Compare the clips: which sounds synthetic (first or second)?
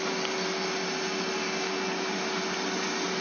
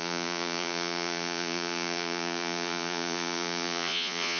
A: second